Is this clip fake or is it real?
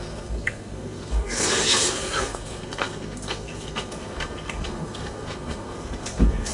fake